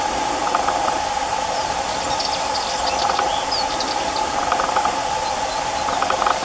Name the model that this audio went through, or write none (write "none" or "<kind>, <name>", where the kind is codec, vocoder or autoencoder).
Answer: none